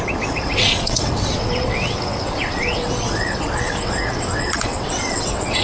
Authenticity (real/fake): fake